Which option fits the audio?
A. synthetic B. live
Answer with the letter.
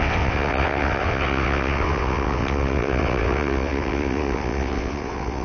A